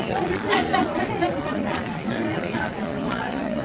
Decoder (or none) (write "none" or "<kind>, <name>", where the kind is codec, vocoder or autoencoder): vocoder, Vocos